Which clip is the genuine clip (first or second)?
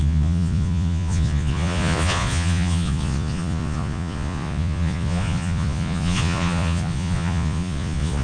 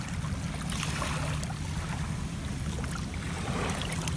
second